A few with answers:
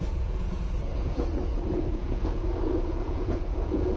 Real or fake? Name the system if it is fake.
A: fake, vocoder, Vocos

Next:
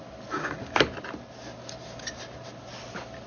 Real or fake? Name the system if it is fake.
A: real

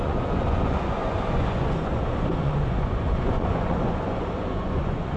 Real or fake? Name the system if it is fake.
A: fake, vocoder, Vocos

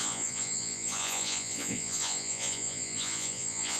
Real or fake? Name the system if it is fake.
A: fake, vocoder, Vocos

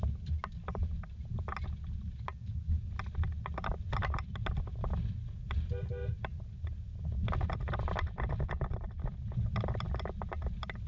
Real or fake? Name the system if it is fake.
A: real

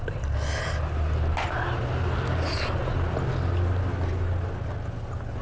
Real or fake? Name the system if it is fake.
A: real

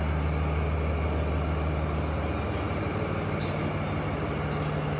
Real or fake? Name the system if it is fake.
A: real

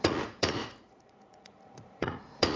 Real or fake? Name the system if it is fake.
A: fake, vocoder, Vocos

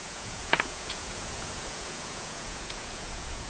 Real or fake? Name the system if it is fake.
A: fake, vocoder, Vocos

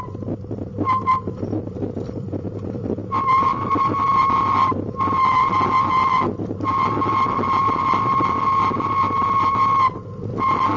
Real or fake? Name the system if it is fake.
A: real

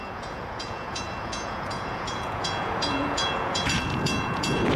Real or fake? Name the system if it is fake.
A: fake, vocoder, Vocos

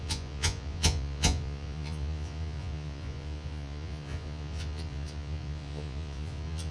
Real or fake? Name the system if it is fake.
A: fake, vocoder, Vocos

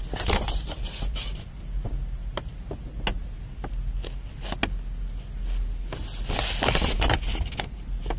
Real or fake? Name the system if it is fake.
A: real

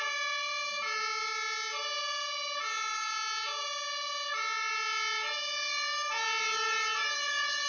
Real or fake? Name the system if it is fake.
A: real